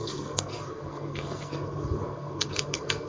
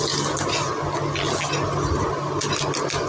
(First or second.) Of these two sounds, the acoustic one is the second